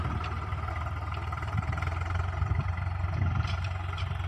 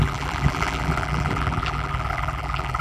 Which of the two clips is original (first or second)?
first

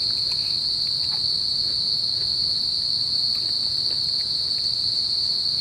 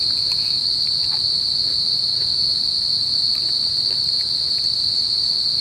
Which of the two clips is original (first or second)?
first